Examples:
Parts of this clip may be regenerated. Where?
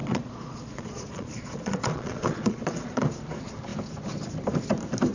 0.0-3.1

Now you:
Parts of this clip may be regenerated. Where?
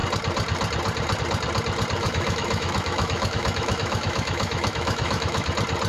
2.0-5.5